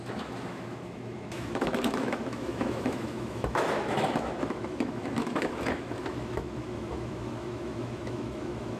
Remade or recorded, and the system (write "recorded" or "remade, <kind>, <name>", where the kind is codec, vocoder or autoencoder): remade, autoencoder, DAC-VAE